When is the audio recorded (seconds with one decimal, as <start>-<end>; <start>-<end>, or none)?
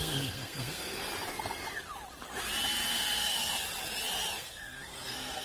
1.0-2.9; 3.5-4.4